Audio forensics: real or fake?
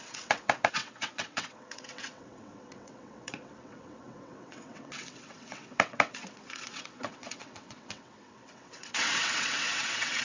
fake